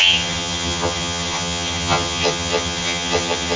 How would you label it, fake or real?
fake